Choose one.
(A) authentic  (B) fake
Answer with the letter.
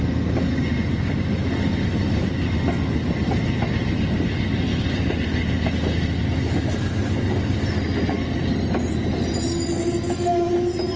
A